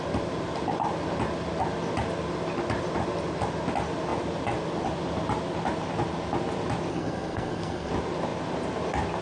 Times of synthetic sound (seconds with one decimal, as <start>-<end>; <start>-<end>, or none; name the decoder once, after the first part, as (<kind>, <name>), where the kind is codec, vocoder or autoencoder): 6.9-7.9 (codec, SNAC)

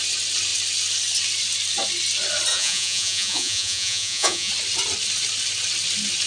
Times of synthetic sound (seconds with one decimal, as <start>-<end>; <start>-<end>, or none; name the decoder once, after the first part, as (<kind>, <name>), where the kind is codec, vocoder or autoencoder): 2.5-4.5 (vocoder, Vocos)

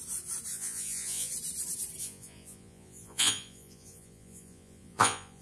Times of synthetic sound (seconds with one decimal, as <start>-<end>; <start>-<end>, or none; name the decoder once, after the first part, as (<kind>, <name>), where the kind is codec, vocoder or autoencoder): 0.5-1.3 (vocoder, Vocos); 2.0-5.4

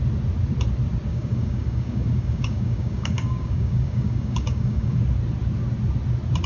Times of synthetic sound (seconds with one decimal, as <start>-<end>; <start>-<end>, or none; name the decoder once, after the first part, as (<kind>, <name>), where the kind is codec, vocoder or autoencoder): 1.1-5.0 (codec, DAC)

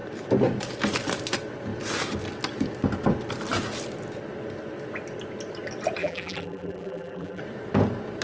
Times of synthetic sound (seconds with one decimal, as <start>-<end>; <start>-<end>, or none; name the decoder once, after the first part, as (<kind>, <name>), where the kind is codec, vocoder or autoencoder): 6.0-7.4 (vocoder, BigVGAN v2)

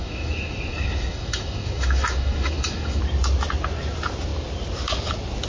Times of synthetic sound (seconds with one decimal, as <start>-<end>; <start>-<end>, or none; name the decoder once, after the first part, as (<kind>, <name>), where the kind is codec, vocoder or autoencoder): 0.0-3.0 (autoencoder, DAC-VAE)

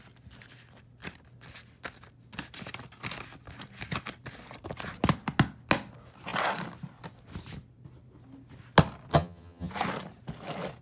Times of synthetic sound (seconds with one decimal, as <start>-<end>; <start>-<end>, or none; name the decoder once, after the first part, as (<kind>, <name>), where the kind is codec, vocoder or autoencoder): 9.1-9.7 (vocoder, HiFi-GAN)

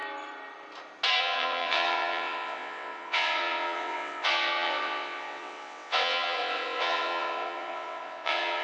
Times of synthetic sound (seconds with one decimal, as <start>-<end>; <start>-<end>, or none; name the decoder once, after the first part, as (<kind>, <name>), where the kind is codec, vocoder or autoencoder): 1.2-8.6 (vocoder, WaveNeXt)